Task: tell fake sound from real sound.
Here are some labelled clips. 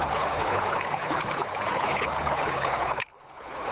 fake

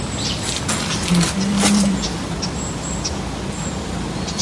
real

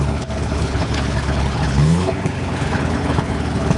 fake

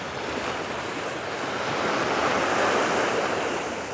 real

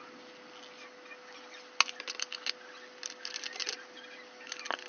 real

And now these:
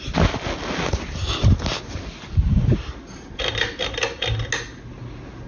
real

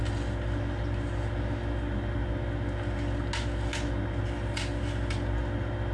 real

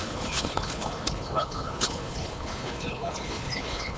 fake